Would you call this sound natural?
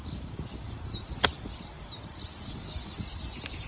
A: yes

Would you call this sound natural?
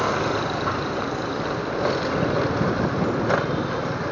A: yes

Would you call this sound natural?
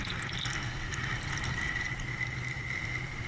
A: yes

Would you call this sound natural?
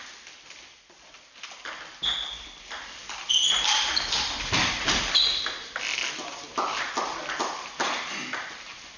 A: yes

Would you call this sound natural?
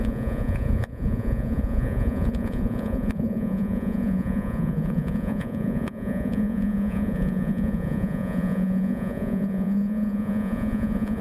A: no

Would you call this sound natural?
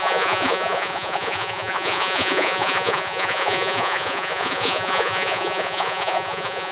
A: no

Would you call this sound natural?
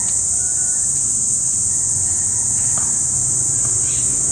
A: yes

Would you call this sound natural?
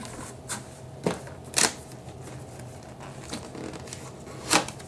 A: yes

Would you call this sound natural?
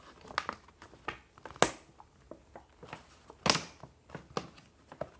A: yes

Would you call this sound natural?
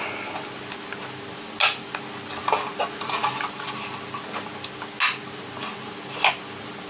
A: yes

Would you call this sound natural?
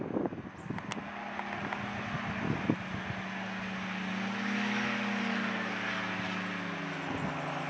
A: yes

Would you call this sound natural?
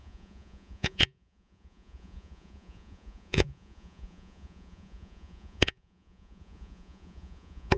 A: no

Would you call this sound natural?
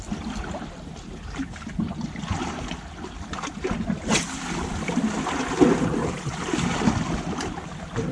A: yes